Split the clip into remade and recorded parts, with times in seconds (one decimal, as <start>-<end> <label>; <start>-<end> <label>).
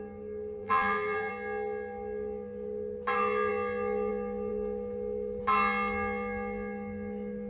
0.0-0.6 recorded; 0.6-1.3 remade; 1.3-7.5 recorded